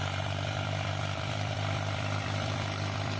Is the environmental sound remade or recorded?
remade